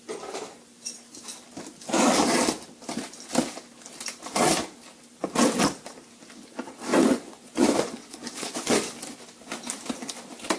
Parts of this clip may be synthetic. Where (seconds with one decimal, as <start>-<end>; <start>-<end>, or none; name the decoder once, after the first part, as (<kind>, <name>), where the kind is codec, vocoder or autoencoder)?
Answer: 6.9-8.8 (vocoder, Vocos)